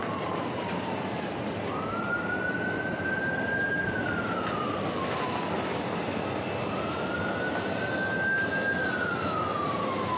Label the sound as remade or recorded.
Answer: recorded